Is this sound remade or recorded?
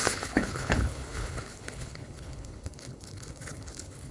remade